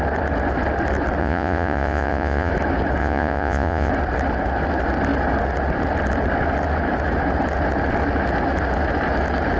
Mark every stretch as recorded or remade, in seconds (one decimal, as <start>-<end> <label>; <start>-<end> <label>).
0.0-1.2 recorded; 1.2-2.5 remade; 2.5-3.0 recorded; 3.0-3.9 remade; 3.9-9.6 recorded